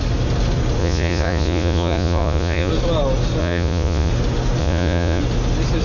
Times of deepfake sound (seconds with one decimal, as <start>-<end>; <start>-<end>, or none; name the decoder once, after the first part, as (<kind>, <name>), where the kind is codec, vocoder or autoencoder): 0.8-2.7 (vocoder, Vocos); 3.4-4.1; 4.6-5.2